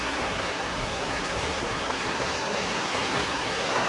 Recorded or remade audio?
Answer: remade